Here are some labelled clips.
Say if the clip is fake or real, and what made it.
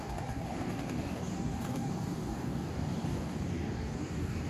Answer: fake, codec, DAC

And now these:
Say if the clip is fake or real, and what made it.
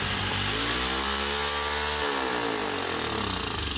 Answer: real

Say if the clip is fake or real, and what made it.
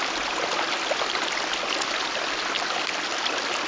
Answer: real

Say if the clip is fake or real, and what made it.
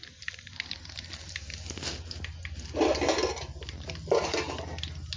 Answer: real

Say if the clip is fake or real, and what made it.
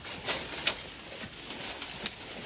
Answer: real